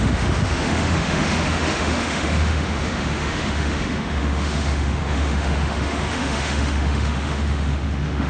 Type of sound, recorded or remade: remade